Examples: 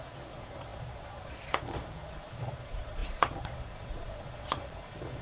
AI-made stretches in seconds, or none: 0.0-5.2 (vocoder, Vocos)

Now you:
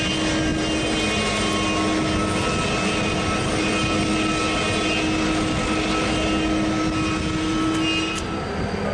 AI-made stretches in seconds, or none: none

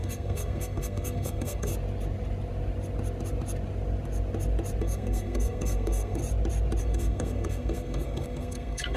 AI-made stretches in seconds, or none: 0.0-1.7 (codec, SNAC); 4.8-6.2; 6.8-9.0

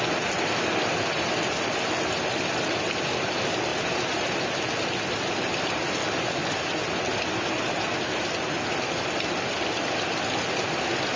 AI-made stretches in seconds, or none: 3.7-4.4 (vocoder, BigVGAN v2)

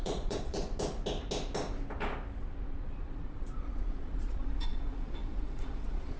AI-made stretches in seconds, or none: 0.0-0.6 (vocoder, Vocos); 2.7-6.2

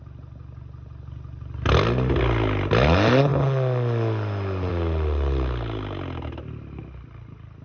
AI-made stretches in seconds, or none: none